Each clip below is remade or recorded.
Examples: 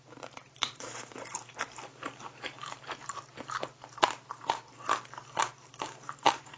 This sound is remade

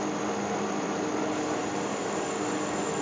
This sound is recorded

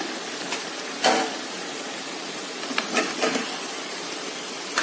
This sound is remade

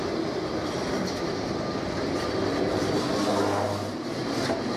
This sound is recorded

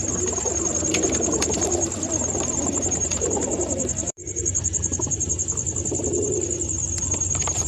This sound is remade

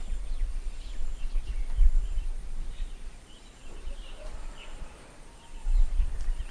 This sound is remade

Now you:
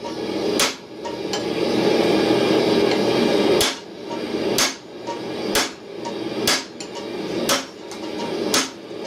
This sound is recorded